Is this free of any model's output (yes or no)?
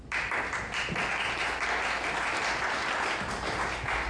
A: yes